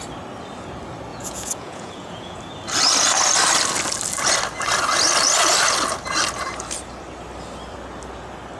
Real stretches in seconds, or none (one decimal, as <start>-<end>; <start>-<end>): 0.0-1.1; 2.4-8.6